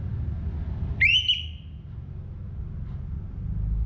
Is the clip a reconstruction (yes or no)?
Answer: no